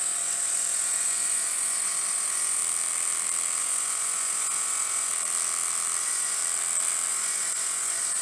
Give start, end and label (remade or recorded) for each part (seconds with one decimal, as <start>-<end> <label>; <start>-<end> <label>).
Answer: 0.0-2.6 remade; 2.6-3.6 recorded; 3.6-5.1 remade; 5.1-6.0 recorded; 6.0-6.4 remade; 6.4-7.1 recorded; 7.1-8.2 remade